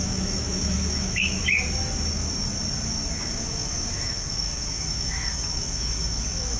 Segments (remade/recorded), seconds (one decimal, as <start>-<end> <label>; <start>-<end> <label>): 0.0-1.4 remade; 1.4-3.2 recorded; 3.2-6.6 remade

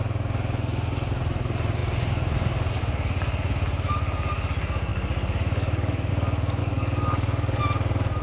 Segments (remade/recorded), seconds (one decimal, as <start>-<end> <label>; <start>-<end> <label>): 0.0-4.9 recorded; 4.9-6.1 remade; 6.1-6.6 recorded; 6.6-7.6 remade; 7.6-8.2 recorded

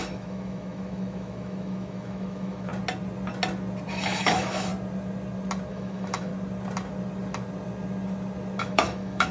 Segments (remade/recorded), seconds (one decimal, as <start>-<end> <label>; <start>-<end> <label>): 0.0-2.7 remade; 2.7-3.9 recorded; 3.9-4.7 remade; 4.7-5.7 recorded; 5.7-6.3 remade; 6.3-8.6 recorded; 8.6-9.3 remade

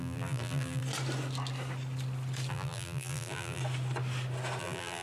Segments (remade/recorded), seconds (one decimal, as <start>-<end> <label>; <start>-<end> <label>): 0.0-0.8 remade; 0.8-2.5 recorded; 2.5-3.6 remade; 3.6-4.6 recorded; 4.6-5.0 remade

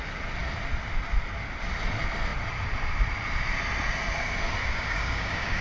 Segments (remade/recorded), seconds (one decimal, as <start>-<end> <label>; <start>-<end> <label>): 0.0-4.6 recorded; 4.6-5.6 remade

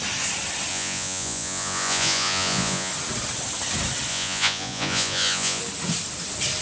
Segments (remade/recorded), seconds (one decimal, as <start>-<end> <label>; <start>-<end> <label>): 0.0-0.7 recorded; 0.7-2.9 remade; 2.9-4.1 recorded; 4.1-5.6 remade; 5.6-6.6 recorded